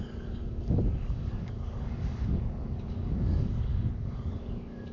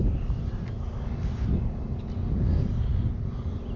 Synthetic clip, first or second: first